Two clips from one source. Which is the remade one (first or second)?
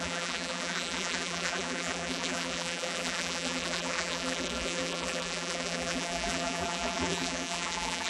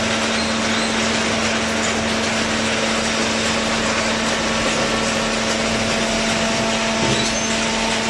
first